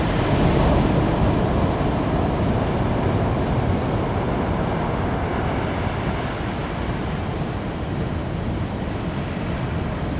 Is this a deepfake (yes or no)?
no